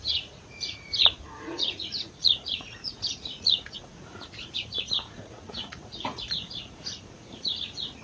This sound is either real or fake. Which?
fake